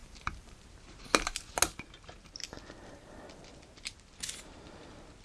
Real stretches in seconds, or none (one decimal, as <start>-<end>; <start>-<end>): 0.6-2.8; 3.5-5.2